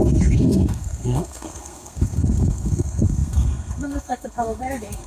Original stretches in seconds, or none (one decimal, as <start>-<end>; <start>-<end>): none